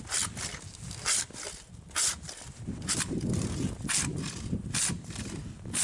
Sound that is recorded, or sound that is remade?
recorded